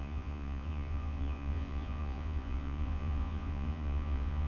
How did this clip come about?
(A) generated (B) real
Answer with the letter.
A